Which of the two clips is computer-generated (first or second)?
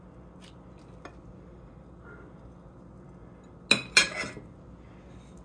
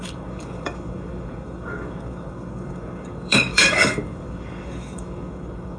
second